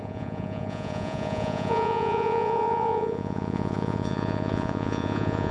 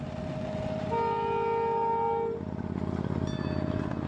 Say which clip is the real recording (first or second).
second